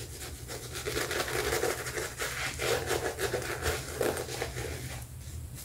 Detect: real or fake real